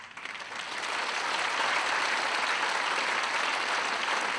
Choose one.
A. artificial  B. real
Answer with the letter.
B